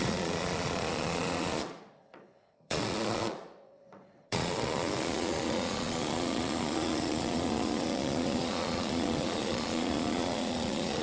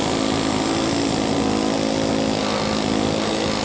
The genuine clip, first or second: second